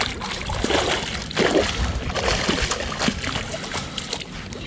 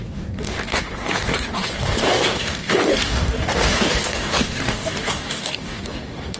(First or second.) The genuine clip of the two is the first